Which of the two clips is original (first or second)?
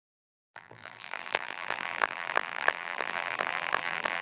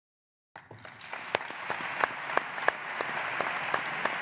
second